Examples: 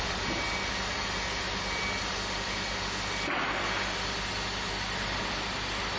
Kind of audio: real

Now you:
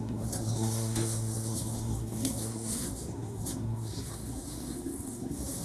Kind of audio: fake